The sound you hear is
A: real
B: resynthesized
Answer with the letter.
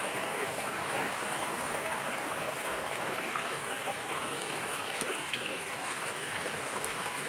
B